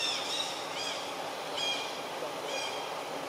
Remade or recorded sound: remade